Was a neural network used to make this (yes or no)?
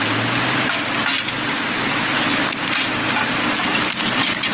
no